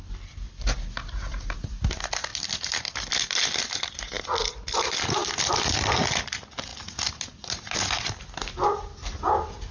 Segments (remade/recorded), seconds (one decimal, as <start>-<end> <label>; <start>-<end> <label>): 0.0-5.2 recorded; 5.2-6.1 remade; 6.1-9.7 recorded